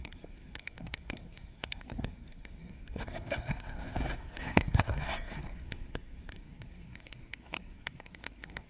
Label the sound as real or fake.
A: fake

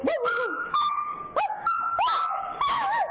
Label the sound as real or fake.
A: fake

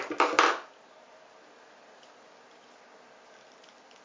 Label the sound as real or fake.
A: real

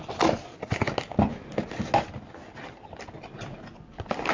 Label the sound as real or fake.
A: real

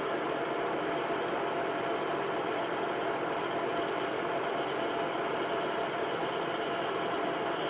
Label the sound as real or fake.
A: fake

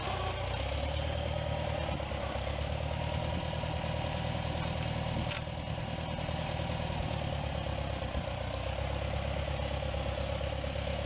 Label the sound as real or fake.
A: real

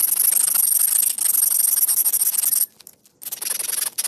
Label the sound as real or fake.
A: real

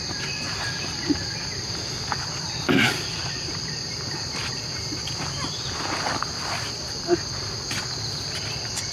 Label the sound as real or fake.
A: fake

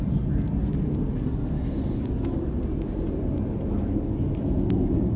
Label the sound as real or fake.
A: real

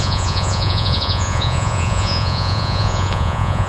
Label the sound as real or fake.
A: fake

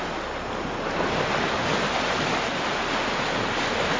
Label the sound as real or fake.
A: real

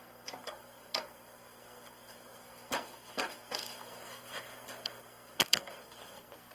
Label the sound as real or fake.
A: fake